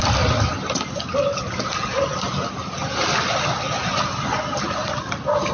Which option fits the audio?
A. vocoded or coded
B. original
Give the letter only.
B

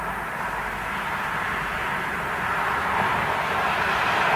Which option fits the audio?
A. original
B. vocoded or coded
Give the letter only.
A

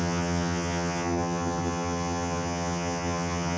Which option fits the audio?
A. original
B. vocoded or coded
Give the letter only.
B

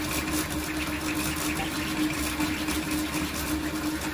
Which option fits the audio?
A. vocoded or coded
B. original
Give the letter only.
B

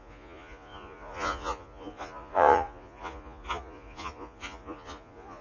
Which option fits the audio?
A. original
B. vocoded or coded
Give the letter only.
B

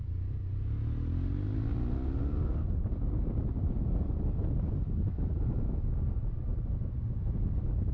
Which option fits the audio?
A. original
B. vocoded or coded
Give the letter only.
A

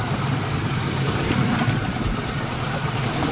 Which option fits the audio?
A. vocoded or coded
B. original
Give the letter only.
A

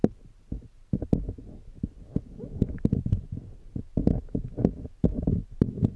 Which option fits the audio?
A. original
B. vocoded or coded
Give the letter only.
A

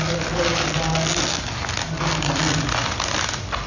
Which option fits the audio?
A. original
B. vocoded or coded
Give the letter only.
A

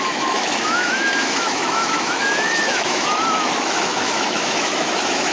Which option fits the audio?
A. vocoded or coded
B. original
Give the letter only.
A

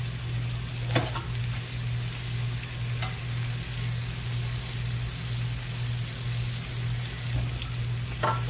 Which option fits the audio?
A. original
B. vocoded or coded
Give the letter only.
A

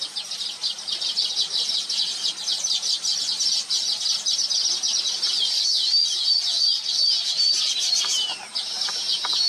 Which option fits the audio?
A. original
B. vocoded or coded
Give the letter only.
A